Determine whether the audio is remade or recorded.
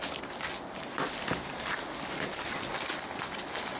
recorded